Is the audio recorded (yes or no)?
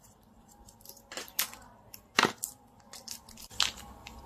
yes